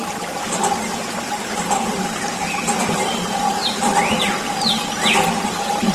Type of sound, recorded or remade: remade